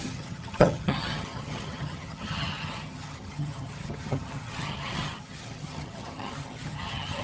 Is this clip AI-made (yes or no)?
yes